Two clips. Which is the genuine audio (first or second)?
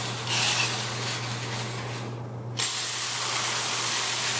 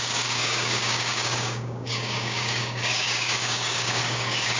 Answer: first